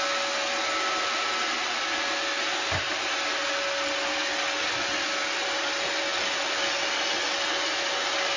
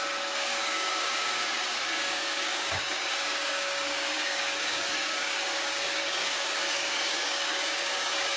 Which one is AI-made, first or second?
second